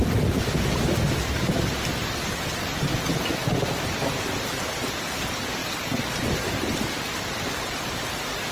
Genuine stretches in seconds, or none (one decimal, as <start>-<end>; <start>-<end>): 0.0-3.4; 4.2-8.5